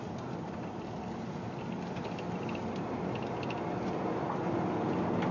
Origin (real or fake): real